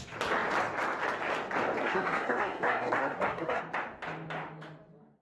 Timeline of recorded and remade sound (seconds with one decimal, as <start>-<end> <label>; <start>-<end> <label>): 0.0-1.8 recorded; 1.8-3.6 remade; 3.6-5.2 recorded